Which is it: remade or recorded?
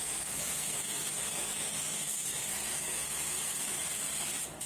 remade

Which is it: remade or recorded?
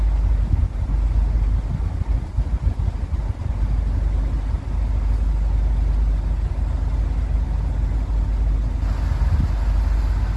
recorded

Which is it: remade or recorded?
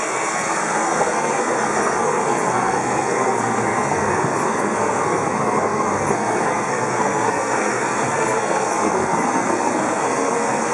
remade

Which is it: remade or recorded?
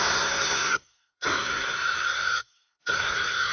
remade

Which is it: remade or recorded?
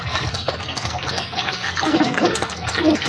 remade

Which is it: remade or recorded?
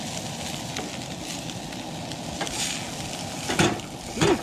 recorded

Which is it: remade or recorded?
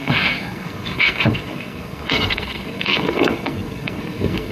remade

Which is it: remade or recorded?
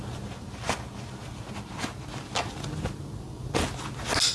recorded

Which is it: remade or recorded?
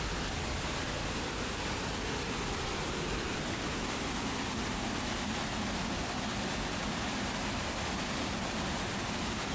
recorded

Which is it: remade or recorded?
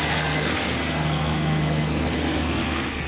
remade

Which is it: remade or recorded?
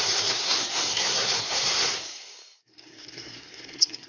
remade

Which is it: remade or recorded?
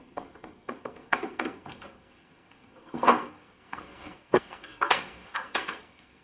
remade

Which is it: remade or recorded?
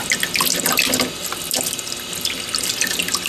recorded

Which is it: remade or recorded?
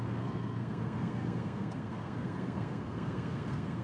remade